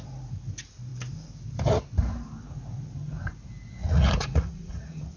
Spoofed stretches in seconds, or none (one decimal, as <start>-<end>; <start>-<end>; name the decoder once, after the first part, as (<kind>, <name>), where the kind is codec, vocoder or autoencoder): 3.8-5.2 (vocoder, Vocos)